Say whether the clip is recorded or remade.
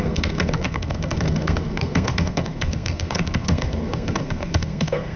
remade